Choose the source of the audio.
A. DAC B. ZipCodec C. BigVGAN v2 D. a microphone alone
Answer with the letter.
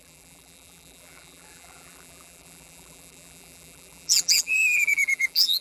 C